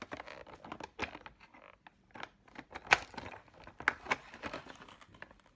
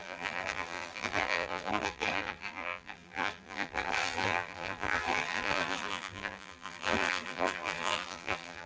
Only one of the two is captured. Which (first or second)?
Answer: first